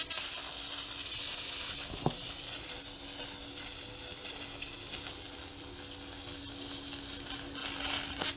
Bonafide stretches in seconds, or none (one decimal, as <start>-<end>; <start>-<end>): 0.0-8.4